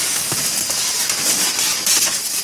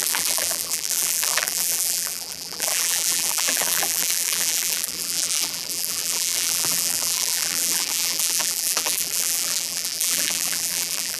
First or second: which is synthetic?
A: second